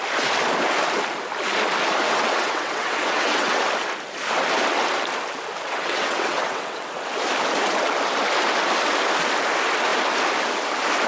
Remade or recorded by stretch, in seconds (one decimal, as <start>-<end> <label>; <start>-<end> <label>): 0.0-2.0 recorded; 2.0-3.6 remade; 3.6-5.7 recorded; 5.7-6.9 remade; 6.9-11.1 recorded